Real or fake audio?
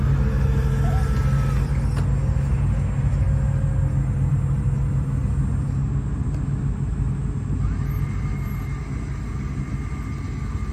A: real